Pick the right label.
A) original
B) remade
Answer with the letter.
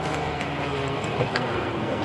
B